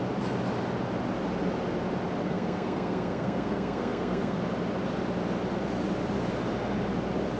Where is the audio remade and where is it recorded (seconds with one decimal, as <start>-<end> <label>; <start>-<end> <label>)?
0.0-2.2 recorded; 2.2-4.4 remade; 4.4-7.4 recorded